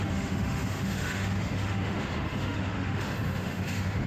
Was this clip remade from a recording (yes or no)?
yes